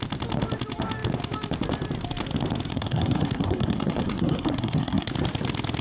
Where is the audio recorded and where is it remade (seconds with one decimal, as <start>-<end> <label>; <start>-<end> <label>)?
0.0-2.7 recorded; 2.7-5.1 remade; 5.1-5.8 recorded